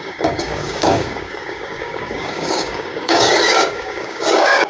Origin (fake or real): fake